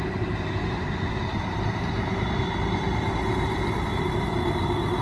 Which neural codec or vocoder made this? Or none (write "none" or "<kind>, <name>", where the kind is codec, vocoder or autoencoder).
vocoder, BigVGAN v2